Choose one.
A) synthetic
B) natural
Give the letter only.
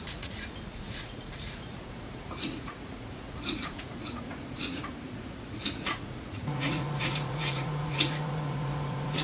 A